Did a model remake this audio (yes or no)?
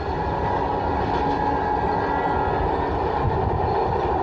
no